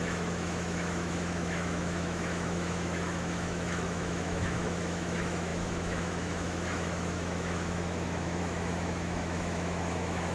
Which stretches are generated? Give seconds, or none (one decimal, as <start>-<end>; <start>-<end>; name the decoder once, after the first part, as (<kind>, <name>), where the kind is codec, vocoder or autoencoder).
0.0-10.3 (autoencoder, DAC-VAE)